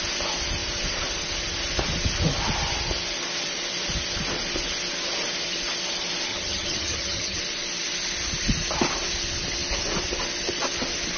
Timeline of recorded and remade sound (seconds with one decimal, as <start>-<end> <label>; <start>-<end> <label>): 0.0-6.3 recorded; 6.3-7.4 remade; 7.4-11.2 recorded